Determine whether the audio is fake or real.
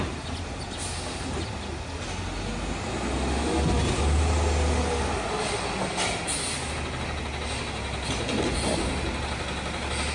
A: real